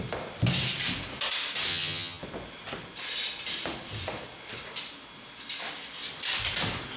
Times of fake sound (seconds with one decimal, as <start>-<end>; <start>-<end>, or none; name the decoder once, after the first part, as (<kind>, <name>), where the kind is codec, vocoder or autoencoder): 1.7-2.2 (vocoder, HiFi-GAN)